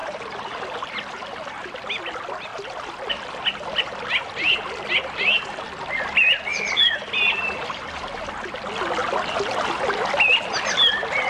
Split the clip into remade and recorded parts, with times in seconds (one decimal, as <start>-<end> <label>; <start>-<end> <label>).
0.0-2.0 remade; 2.0-2.5 recorded; 2.5-5.6 remade; 5.6-6.5 recorded; 6.5-8.3 remade; 8.3-11.3 recorded

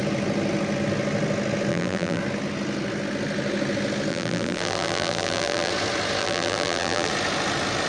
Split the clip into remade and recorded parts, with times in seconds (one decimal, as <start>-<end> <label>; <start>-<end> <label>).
0.0-1.7 recorded; 1.7-2.2 remade; 2.2-4.1 recorded; 4.1-5.7 remade; 5.7-6.2 recorded; 6.2-7.1 remade; 7.1-7.9 recorded

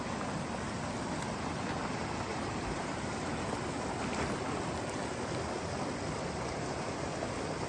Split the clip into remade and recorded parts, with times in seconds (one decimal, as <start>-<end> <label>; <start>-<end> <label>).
0.0-2.3 recorded; 2.3-3.3 remade; 3.3-7.7 recorded

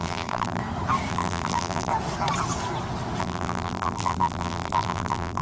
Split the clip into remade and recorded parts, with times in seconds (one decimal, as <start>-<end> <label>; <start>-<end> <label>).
0.0-0.6 remade; 0.6-1.1 recorded; 1.1-1.9 remade; 1.9-3.2 recorded; 3.2-5.4 remade

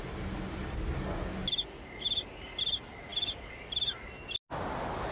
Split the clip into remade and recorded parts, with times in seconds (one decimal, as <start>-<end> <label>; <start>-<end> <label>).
0.0-3.1 recorded; 3.1-3.7 remade; 3.7-5.1 recorded